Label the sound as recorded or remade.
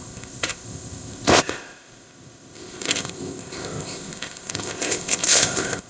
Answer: remade